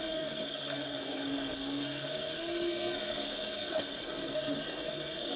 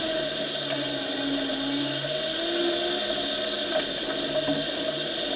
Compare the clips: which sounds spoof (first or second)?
first